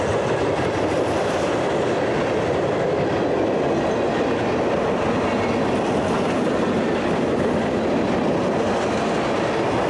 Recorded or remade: recorded